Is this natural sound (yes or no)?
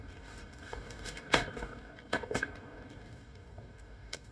no